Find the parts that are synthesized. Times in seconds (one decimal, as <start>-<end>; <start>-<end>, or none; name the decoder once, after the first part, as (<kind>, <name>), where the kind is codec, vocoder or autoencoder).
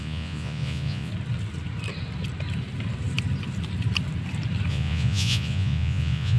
0.0-1.1 (vocoder, Vocos); 4.7-6.4